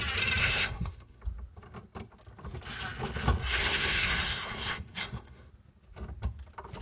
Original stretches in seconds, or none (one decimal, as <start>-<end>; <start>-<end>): 0.0-0.4; 1.2-3.4; 5.5-6.8